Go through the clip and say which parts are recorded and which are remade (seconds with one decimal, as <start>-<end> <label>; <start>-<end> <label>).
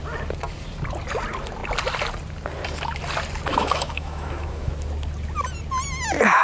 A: 0.0-3.5 recorded; 3.5-4.7 remade; 4.7-6.4 recorded